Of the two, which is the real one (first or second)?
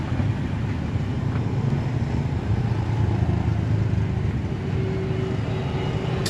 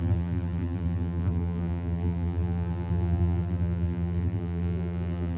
first